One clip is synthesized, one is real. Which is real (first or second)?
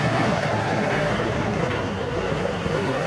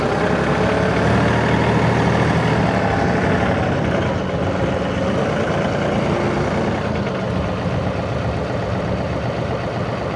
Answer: second